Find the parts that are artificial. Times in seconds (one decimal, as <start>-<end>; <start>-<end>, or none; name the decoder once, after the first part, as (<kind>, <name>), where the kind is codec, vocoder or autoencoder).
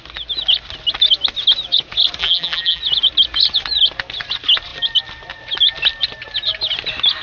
2.2-2.8 (vocoder, BigVGAN v2)